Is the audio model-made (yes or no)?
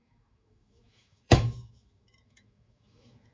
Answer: yes